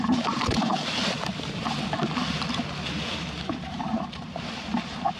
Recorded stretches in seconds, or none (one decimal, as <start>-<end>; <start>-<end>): 0.7-3.7